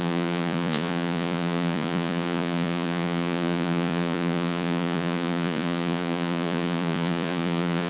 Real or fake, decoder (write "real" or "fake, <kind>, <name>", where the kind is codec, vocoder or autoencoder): fake, vocoder, Vocos